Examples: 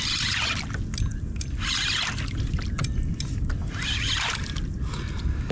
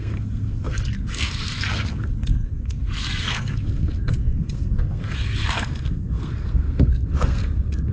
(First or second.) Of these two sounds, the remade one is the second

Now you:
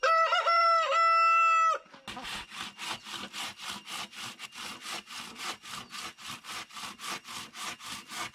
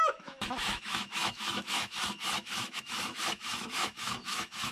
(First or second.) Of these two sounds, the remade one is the second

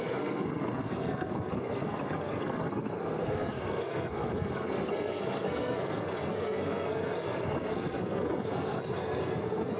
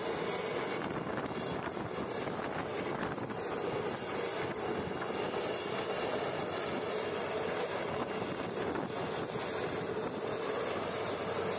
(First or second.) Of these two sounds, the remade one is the first